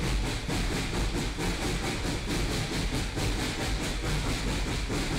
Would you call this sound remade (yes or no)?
no